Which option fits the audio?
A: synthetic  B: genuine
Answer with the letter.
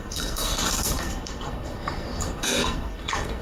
A